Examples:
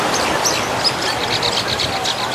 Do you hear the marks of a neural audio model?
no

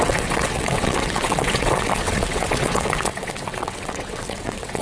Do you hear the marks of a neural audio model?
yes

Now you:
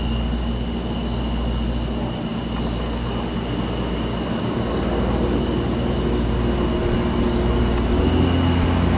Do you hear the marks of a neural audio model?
no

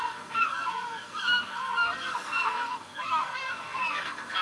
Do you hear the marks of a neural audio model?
yes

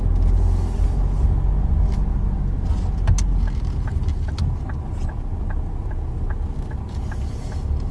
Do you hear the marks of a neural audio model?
no